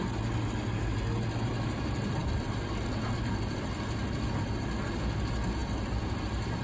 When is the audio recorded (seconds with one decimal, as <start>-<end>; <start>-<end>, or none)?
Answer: 0.0-6.6